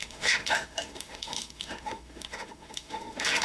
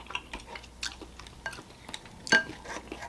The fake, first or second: first